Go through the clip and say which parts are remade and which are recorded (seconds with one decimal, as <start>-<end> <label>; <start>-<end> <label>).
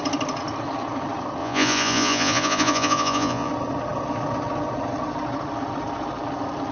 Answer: 0.0-1.4 recorded; 1.4-3.5 remade; 3.5-6.7 recorded